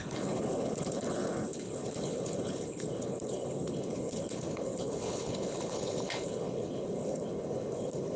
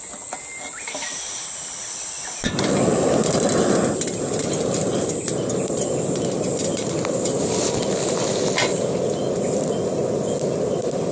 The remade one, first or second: first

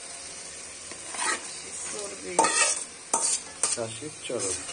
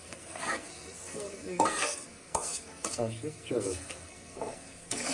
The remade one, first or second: second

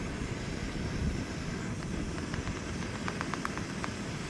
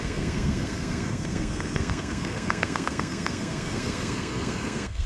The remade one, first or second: second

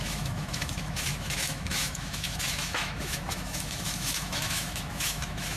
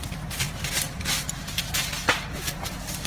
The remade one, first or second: first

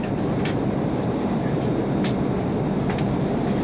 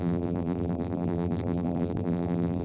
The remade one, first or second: second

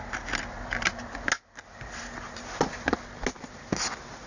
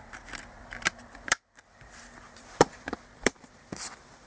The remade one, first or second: second